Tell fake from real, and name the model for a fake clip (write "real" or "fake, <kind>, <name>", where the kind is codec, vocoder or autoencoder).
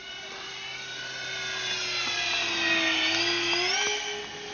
real